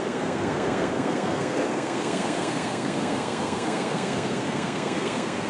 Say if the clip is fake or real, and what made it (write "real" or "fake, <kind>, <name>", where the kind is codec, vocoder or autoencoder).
fake, codec, SNAC